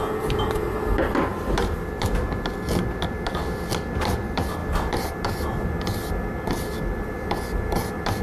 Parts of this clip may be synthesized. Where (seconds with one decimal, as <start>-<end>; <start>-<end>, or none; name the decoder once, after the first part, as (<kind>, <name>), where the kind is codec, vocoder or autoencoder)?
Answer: 1.3-2.2 (vocoder, BigVGAN v2)